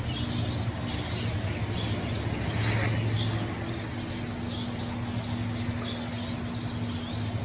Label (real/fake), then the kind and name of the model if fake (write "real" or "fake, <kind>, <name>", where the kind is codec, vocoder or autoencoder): real